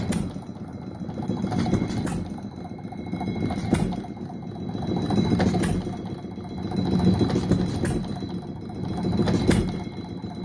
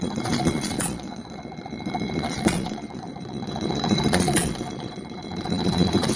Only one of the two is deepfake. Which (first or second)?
second